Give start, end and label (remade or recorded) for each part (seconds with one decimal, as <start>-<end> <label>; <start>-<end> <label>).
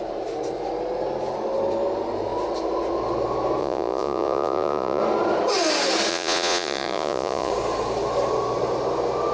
0.0-3.6 recorded; 3.6-5.0 remade; 5.0-6.1 recorded; 6.1-7.5 remade; 7.5-9.3 recorded